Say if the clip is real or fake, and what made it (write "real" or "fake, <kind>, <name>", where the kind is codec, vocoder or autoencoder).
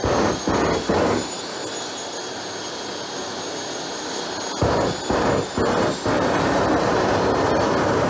real